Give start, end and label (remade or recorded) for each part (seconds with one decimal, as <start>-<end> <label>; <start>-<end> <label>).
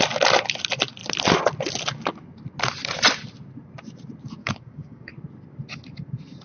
0.0-4.4 recorded; 4.4-5.1 remade; 5.1-6.4 recorded